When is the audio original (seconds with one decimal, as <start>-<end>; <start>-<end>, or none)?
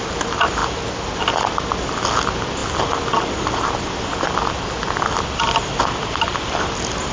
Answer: 0.0-7.1